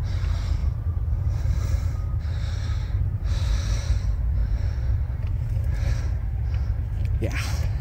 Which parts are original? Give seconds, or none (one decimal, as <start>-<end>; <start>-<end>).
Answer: 0.0-0.6; 2.2-2.6; 3.5-4.4; 6.0-7.8